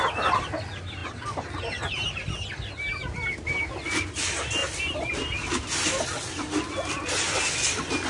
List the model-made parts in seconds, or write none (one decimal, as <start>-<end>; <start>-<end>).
none